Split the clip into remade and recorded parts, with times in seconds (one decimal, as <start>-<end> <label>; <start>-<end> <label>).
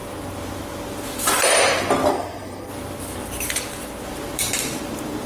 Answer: 0.0-2.1 recorded; 2.1-2.7 remade; 2.7-5.3 recorded